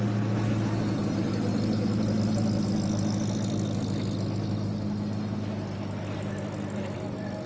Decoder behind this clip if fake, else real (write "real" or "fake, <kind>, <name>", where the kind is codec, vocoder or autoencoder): real